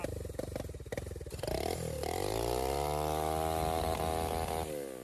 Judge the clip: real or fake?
real